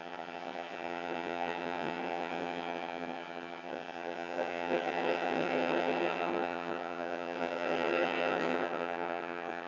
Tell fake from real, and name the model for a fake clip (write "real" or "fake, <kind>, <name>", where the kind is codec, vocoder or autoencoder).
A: fake, vocoder, HiFi-GAN